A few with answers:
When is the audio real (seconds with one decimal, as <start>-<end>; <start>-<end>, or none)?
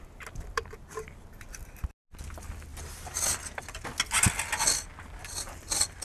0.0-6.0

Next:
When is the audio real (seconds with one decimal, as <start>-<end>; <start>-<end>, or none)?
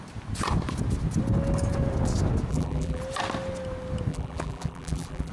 0.0-2.5; 3.0-4.1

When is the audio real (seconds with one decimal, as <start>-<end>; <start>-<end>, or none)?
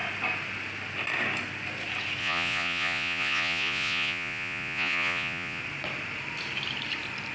0.0-2.2; 5.6-7.3